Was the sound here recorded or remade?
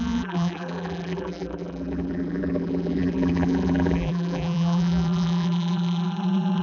remade